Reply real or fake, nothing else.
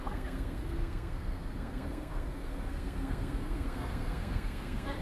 fake